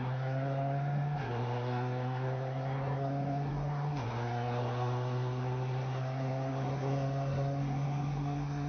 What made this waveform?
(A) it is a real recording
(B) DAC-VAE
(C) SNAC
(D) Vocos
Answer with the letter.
C